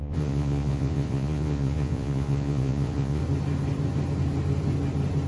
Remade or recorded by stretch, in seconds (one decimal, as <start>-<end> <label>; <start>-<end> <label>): 0.0-3.2 remade; 3.2-5.3 recorded